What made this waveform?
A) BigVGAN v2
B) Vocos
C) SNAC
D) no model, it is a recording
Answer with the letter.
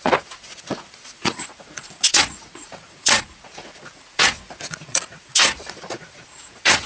B